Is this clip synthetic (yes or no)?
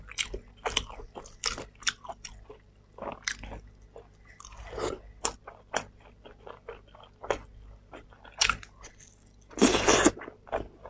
no